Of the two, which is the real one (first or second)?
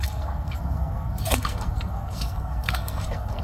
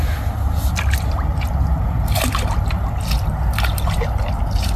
second